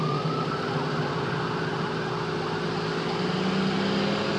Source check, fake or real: real